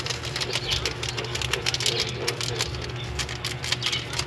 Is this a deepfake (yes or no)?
no